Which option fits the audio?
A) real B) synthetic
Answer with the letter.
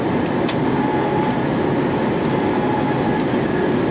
A